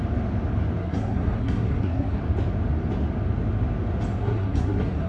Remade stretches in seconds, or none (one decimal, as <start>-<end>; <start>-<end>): 0.8-2.2; 4.2-5.1